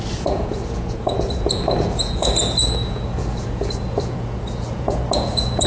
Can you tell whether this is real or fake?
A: fake